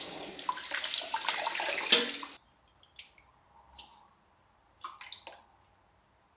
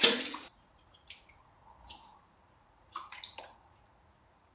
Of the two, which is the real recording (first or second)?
first